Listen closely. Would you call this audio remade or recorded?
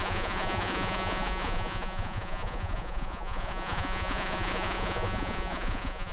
remade